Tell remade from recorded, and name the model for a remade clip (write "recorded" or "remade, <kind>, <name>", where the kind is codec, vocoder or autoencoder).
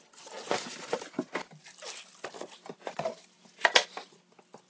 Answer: recorded